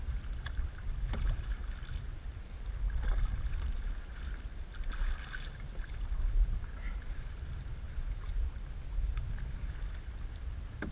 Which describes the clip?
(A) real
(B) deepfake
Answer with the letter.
A